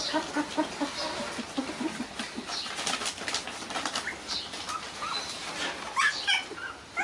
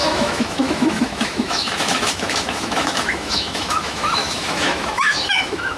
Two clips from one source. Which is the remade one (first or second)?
second